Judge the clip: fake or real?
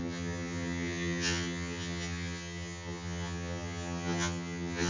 fake